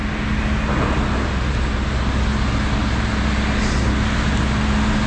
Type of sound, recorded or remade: recorded